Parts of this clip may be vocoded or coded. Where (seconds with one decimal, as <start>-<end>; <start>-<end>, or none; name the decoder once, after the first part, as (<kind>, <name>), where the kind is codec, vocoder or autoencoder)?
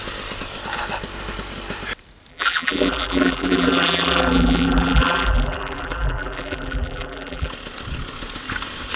2.3-7.5 (vocoder, BigVGAN v2)